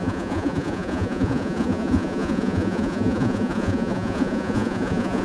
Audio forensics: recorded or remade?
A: remade